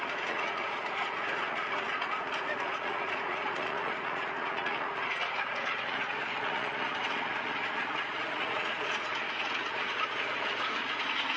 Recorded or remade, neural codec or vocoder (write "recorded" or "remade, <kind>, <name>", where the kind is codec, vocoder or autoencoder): remade, vocoder, Vocos